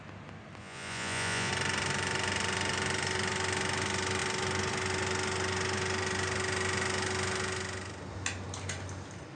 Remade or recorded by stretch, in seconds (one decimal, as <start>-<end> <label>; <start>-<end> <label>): 0.0-0.6 recorded; 0.6-1.5 remade; 1.5-9.3 recorded